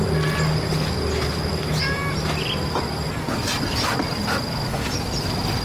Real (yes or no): yes